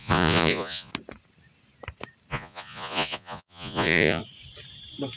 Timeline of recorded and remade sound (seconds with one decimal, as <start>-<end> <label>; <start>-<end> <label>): 0.0-0.9 remade; 0.9-2.3 recorded; 2.3-4.2 remade; 4.2-5.2 recorded